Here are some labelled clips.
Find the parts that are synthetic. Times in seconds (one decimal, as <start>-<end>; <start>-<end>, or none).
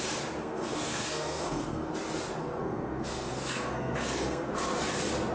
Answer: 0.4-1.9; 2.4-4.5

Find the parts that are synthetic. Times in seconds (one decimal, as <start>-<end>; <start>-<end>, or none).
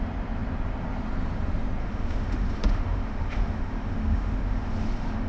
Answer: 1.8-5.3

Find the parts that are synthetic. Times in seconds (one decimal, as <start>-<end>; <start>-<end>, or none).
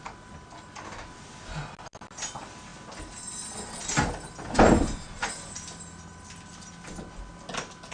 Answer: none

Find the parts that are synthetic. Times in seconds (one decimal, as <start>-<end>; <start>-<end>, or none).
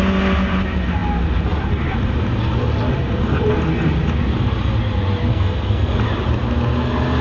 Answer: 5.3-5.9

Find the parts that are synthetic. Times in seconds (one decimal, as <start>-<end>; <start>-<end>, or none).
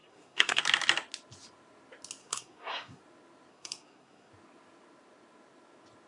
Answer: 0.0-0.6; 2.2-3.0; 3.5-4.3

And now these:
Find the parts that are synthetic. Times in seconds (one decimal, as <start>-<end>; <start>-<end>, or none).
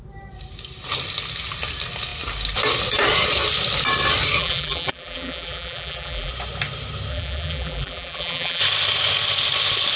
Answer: 4.4-6.3; 7.1-8.6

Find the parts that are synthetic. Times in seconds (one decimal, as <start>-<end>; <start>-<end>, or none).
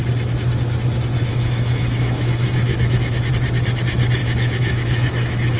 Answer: 1.3-3.3; 4.2-5.6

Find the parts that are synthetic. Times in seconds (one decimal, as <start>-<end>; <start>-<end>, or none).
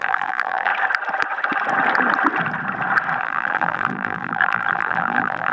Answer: 0.0-0.7; 3.2-5.5